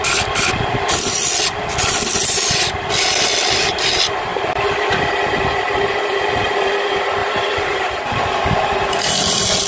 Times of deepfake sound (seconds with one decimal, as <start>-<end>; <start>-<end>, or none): 7.2-8.9